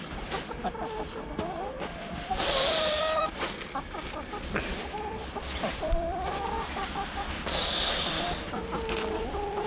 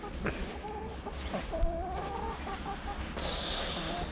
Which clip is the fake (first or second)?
first